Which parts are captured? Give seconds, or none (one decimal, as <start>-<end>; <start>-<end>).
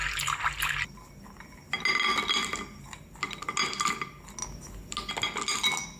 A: 0.0-6.0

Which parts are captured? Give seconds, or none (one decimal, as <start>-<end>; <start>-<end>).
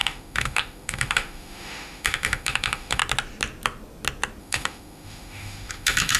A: 3.0-4.4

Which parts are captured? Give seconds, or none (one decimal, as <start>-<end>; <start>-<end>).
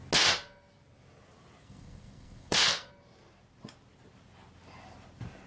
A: 0.0-1.6; 2.9-5.5